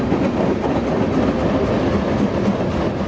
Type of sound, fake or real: real